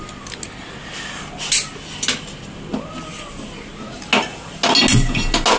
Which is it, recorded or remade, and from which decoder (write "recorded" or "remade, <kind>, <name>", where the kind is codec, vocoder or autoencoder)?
recorded